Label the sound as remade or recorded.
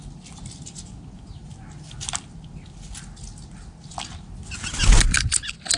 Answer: recorded